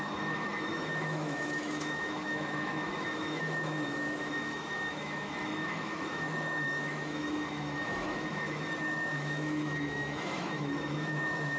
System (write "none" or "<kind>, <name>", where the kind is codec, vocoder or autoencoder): autoencoder, DAC-VAE